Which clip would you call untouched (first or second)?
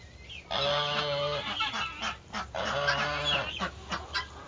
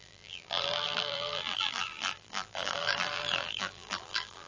first